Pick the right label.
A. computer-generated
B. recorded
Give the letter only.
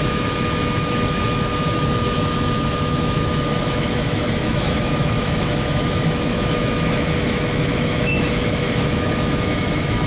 A